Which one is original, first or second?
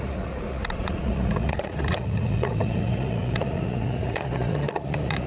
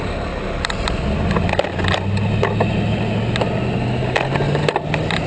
second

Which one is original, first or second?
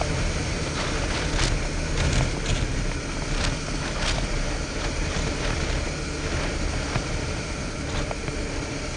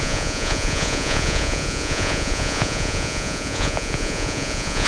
first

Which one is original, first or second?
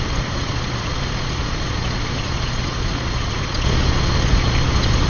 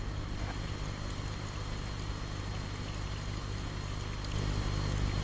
second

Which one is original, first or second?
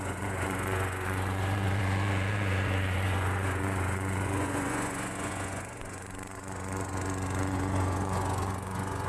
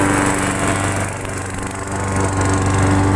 second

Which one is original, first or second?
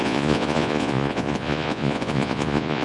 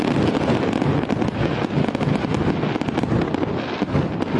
second